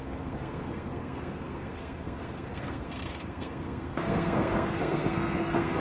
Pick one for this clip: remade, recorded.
remade